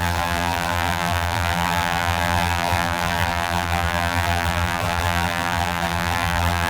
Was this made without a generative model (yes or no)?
no